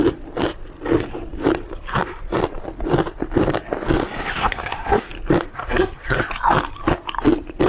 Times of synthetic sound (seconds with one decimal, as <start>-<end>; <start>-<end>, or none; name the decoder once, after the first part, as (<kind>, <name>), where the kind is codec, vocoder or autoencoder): 4.4-5.1 (codec, SNAC); 5.5-6.2